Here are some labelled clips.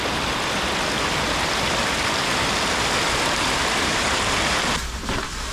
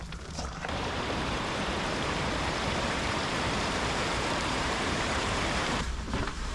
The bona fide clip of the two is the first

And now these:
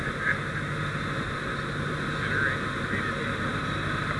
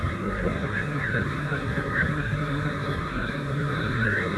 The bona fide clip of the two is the first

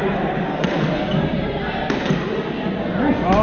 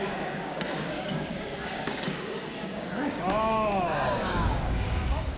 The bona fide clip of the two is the first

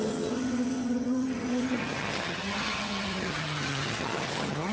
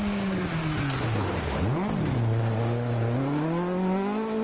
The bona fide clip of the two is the second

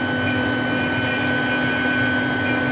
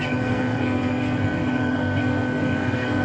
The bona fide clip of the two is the first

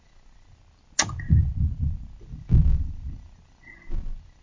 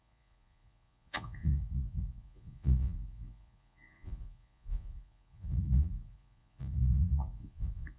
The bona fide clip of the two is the first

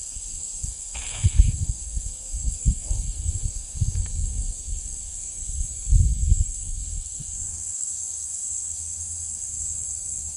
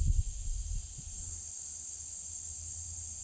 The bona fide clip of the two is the second